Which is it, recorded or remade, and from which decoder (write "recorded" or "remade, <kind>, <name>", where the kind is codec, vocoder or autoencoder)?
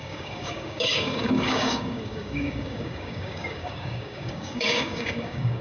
remade, codec, DAC